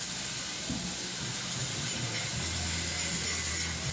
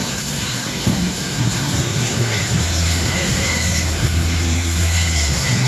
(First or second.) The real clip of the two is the first